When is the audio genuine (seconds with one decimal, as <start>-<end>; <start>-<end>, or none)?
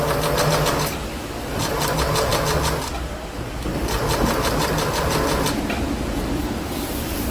0.0-7.3